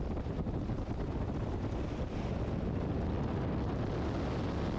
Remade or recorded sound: recorded